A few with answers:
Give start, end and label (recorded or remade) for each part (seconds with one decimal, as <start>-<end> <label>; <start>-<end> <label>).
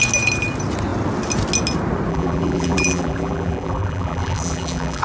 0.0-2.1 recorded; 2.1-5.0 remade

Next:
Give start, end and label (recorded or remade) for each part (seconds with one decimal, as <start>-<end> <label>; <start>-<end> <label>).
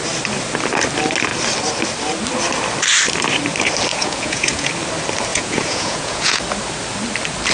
0.0-3.9 recorded; 3.9-4.7 remade; 4.7-5.3 recorded; 5.3-6.4 remade; 6.4-7.5 recorded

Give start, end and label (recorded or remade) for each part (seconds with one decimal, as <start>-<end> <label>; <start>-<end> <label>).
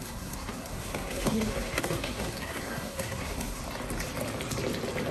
0.0-3.6 remade; 3.6-5.1 recorded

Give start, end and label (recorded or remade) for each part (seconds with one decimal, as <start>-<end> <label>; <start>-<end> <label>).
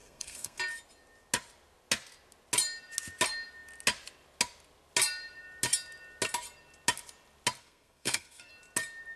0.0-0.6 remade; 0.6-7.6 recorded; 7.6-8.5 remade; 8.5-9.2 recorded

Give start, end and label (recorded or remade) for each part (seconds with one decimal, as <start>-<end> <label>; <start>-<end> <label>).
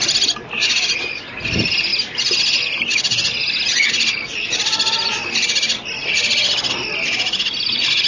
0.0-8.1 recorded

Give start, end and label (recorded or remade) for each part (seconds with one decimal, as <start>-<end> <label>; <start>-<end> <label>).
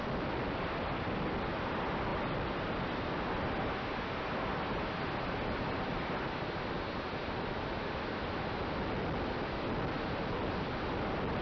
0.0-11.4 recorded